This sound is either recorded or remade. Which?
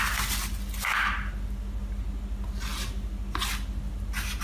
recorded